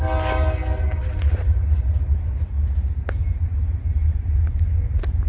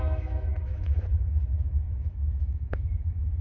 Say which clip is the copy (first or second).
second